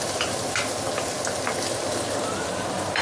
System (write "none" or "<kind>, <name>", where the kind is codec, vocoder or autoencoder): none